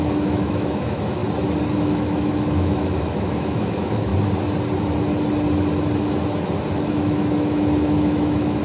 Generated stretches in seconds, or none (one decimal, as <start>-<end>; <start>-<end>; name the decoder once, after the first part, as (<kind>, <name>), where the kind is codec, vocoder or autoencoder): 0.0-1.2 (autoencoder, DAC-VAE); 1.8-4.1; 6.9-8.6